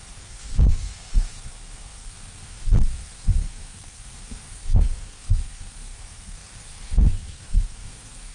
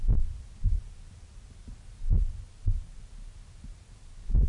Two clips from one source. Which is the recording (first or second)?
second